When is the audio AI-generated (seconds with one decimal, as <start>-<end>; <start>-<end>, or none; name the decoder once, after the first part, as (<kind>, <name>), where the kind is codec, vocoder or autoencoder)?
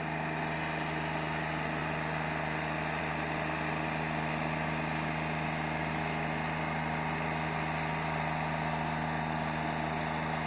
none